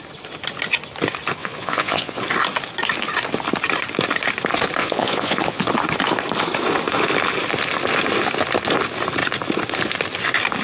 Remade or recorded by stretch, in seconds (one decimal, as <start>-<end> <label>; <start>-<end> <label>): 0.0-1.4 recorded; 1.4-2.2 remade; 2.2-4.8 recorded; 4.8-5.7 remade; 5.7-10.6 recorded